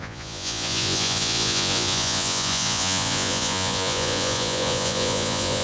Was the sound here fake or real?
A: fake